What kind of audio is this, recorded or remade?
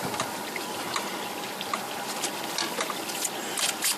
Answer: recorded